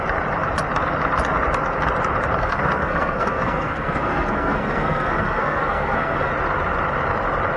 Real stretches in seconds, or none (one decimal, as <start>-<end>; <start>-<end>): 0.0-2.4; 6.3-7.6